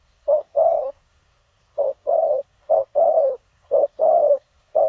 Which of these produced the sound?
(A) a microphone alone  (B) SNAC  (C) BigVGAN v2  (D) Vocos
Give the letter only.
B